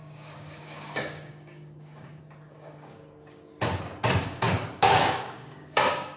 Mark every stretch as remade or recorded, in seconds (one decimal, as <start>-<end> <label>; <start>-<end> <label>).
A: 0.0-3.5 remade; 3.5-4.2 recorded; 4.2-6.2 remade